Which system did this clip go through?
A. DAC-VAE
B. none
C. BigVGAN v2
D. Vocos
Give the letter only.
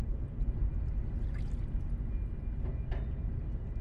B